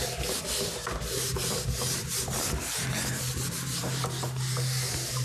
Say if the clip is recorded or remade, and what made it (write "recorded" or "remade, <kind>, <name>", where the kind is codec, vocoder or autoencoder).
recorded